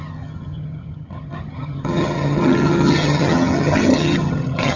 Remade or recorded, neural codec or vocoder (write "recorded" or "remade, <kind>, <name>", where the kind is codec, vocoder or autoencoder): remade, vocoder, HiFi-GAN